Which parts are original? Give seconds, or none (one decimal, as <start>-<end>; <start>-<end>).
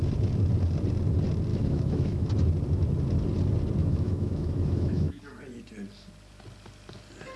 0.0-1.5; 2.3-3.8; 5.2-7.4